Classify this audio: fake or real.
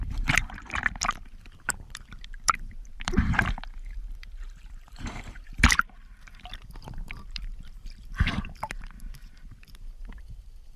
fake